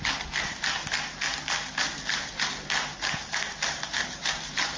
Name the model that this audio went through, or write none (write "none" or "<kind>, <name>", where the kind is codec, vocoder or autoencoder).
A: none